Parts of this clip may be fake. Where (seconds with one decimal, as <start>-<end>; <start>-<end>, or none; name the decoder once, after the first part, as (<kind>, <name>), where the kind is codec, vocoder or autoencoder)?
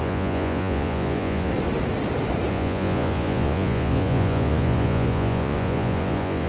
0.0-1.5 (vocoder, Vocos); 2.5-6.5